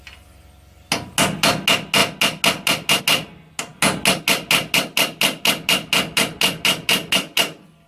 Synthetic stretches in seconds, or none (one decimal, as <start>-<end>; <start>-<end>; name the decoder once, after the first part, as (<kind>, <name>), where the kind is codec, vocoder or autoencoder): none